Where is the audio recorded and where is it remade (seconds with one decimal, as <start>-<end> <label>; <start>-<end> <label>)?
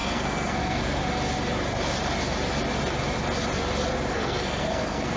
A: 0.0-1.0 remade; 1.0-4.1 recorded; 4.1-5.2 remade